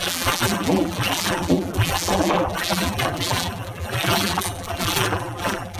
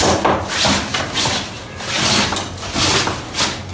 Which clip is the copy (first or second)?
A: first